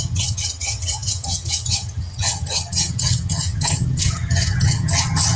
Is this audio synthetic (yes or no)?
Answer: yes